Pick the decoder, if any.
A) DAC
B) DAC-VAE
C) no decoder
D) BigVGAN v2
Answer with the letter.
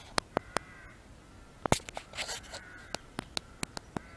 C